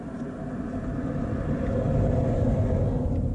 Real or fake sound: real